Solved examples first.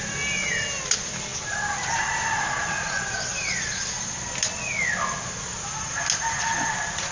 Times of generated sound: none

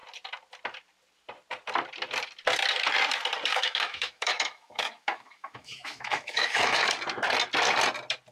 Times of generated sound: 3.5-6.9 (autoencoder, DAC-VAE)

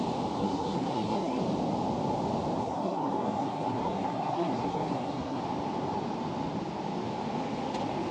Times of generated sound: 0.4-1.4 (codec, SNAC); 2.6-5.4